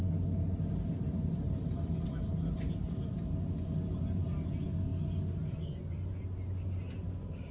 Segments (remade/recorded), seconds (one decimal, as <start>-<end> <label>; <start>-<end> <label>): 0.0-7.5 recorded